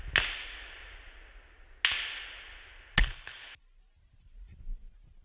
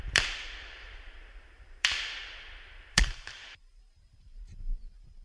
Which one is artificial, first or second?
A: second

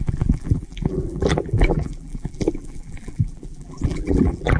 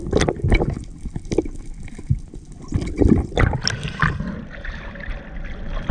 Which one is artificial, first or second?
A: first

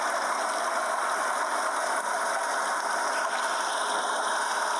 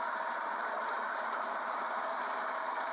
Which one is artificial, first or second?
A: second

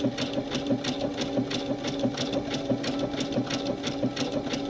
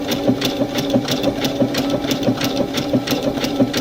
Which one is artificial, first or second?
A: second